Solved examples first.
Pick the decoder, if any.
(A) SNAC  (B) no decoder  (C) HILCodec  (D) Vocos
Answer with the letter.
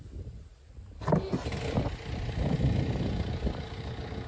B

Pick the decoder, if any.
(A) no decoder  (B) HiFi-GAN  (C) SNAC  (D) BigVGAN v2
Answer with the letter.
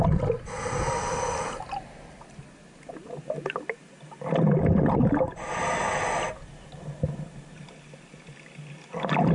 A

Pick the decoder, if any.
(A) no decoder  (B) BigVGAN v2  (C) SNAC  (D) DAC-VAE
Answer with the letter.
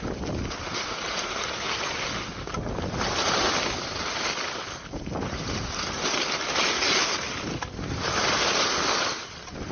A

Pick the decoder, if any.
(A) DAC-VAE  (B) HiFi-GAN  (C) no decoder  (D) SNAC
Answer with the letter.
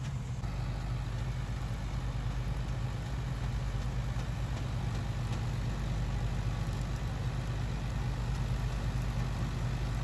C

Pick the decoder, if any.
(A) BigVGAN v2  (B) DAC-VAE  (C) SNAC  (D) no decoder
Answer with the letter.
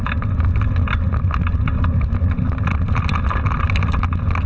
D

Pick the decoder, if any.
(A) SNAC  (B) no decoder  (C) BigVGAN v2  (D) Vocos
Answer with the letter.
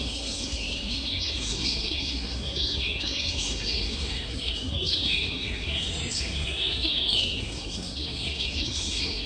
A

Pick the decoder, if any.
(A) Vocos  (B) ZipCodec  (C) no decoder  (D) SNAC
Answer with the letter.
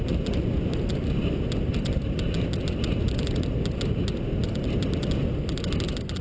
C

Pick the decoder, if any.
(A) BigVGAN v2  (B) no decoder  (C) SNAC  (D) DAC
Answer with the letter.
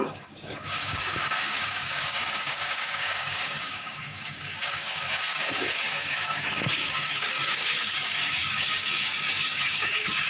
D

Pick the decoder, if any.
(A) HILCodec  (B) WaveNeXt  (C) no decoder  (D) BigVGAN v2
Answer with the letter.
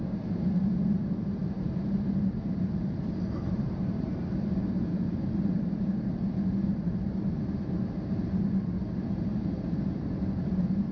D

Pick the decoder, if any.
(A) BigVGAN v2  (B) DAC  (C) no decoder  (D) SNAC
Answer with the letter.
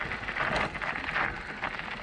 C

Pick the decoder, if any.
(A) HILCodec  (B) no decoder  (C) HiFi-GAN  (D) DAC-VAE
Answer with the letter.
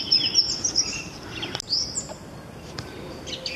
B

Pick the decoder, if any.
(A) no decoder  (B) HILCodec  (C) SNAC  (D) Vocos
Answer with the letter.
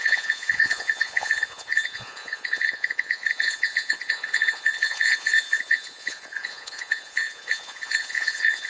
D